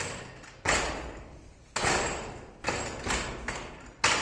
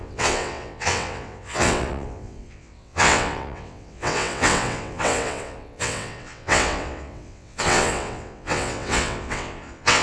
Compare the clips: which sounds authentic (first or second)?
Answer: first